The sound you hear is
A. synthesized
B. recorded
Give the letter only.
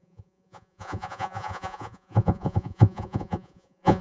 A